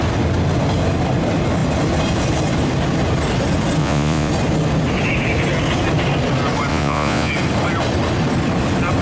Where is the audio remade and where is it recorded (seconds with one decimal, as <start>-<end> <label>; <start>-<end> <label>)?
0.0-3.8 recorded; 3.8-4.3 remade; 4.3-6.7 recorded; 6.7-7.3 remade; 7.3-9.0 recorded